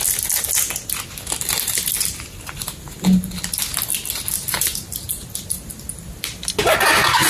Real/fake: real